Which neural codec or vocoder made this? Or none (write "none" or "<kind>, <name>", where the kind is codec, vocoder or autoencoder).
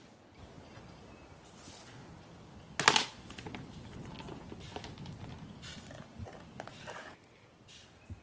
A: none